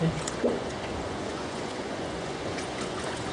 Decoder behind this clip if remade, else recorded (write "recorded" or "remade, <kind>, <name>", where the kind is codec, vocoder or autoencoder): remade, vocoder, Vocos